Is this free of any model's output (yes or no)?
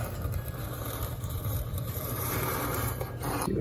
no